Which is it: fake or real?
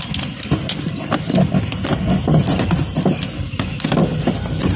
real